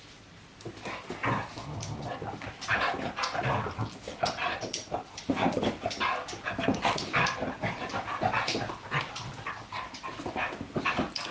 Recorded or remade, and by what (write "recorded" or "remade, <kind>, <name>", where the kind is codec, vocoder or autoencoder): recorded